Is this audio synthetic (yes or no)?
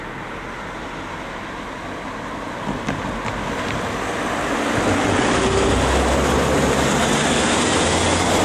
no